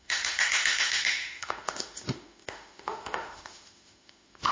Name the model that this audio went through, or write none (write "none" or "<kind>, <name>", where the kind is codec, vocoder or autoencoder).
autoencoder, DAC-VAE